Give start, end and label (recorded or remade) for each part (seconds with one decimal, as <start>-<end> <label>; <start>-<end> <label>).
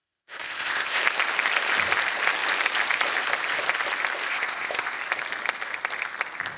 0.0-1.0 remade; 1.0-4.3 recorded; 4.3-5.0 remade; 5.0-6.6 recorded